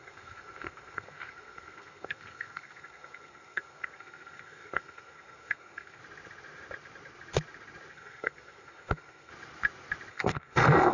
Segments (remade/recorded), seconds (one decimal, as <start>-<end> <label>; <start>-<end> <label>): 0.0-6.0 remade; 6.0-7.9 recorded; 7.9-9.3 remade; 9.3-10.1 recorded; 10.1-10.9 remade